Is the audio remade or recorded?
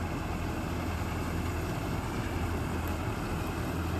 recorded